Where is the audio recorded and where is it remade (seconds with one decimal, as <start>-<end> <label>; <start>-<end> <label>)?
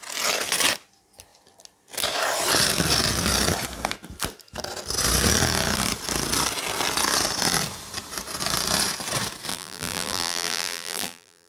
0.0-9.5 recorded; 9.5-11.5 remade